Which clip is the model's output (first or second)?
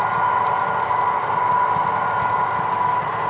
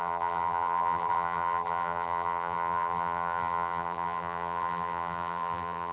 second